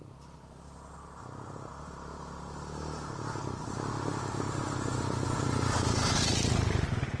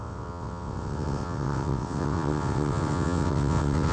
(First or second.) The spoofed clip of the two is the second